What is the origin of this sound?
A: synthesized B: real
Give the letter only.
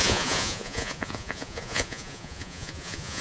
A